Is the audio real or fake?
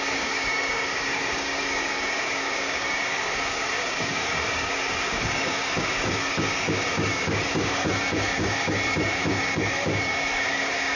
fake